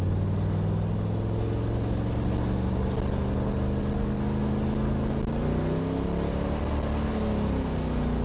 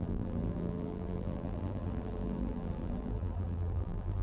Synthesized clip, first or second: second